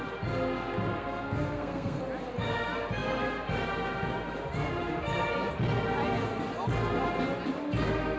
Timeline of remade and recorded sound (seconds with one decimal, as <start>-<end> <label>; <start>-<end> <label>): 0.0-0.9 recorded; 0.9-2.0 remade; 2.0-8.2 recorded